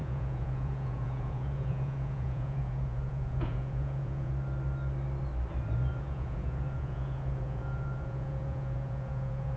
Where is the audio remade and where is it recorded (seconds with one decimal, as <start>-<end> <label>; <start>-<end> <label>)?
0.0-4.3 remade; 4.3-5.9 recorded; 5.9-9.6 remade